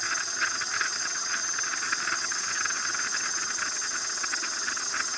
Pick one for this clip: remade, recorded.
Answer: remade